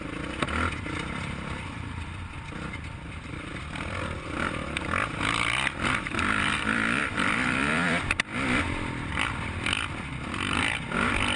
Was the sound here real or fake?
fake